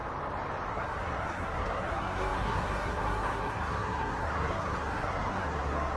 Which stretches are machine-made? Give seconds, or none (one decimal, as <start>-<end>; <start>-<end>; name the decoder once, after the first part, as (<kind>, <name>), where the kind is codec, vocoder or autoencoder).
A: 0.7-6.0 (codec, SNAC)